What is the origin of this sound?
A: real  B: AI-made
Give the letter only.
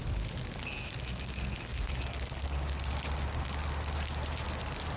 A